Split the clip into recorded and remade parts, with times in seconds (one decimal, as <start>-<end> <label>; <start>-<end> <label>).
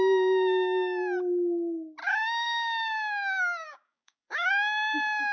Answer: 0.0-2.0 recorded; 2.0-4.5 remade; 4.5-5.3 recorded